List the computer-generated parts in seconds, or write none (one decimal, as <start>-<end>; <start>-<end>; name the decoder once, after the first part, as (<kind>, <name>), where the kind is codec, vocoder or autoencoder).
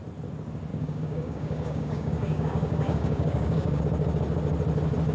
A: 0.7-3.8 (codec, DAC)